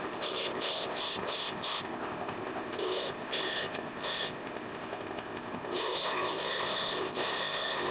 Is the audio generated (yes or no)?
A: yes